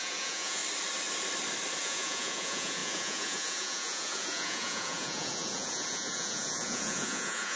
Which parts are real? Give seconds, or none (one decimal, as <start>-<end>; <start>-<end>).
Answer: 0.6-1.8